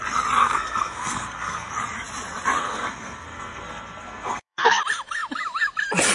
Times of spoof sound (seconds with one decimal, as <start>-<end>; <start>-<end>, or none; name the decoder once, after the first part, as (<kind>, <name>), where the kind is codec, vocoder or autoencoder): 0.4-1.7 (codec, SNAC); 2.6-4.8